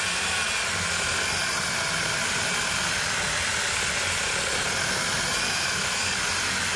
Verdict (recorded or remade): recorded